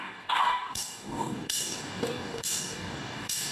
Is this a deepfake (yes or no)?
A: yes